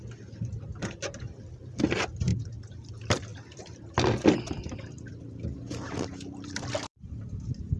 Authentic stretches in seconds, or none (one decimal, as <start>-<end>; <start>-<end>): 0.0-3.3